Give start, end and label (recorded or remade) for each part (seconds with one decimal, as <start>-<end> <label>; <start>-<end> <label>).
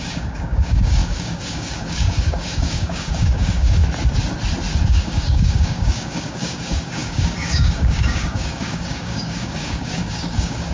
0.0-3.8 remade; 3.8-4.9 recorded; 4.9-10.7 remade